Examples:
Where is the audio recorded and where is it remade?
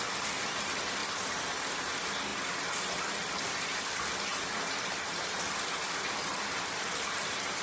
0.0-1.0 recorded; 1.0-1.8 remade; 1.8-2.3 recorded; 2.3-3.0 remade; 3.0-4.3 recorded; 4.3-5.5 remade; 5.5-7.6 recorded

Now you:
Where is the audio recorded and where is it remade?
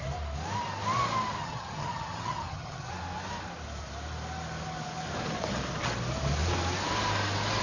0.0-1.4 recorded; 1.4-2.9 remade; 2.9-7.6 recorded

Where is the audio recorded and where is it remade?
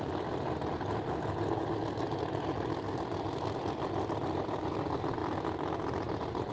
0.0-6.5 recorded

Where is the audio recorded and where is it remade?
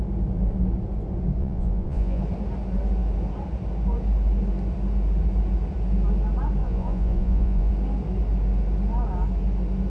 0.0-1.4 recorded; 1.4-2.2 remade; 2.2-6.6 recorded; 6.6-7.7 remade; 7.7-9.9 recorded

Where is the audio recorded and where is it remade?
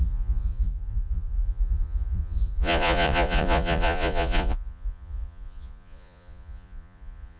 0.0-7.4 remade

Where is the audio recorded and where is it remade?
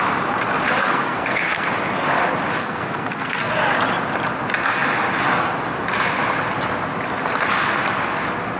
0.0-0.8 recorded; 0.8-1.7 remade; 1.7-2.6 recorded; 2.6-3.5 remade; 3.5-8.6 recorded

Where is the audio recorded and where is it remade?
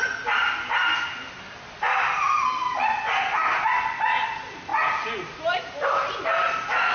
0.0-6.9 recorded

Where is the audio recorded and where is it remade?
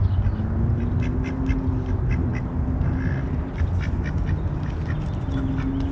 0.0-5.9 recorded